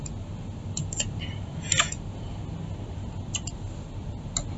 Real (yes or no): yes